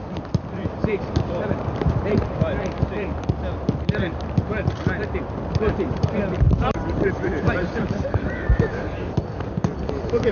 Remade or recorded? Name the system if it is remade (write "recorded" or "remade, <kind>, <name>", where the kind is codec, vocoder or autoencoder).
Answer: remade, vocoder, BigVGAN v2